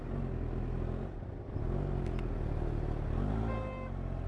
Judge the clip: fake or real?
real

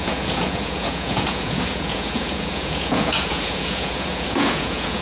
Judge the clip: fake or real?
fake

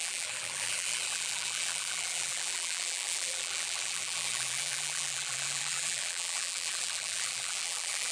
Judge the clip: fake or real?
fake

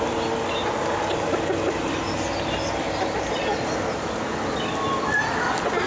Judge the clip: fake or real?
real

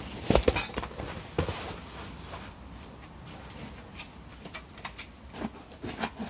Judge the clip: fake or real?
real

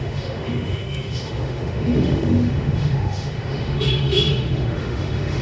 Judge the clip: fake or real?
fake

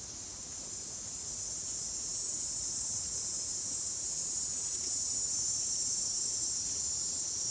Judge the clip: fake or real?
fake